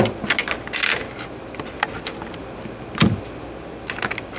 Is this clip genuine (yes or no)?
yes